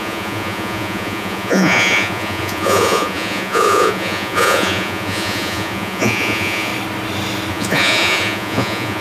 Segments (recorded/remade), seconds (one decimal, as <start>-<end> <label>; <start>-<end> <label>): 0.0-6.7 remade; 6.7-7.5 recorded; 7.5-9.0 remade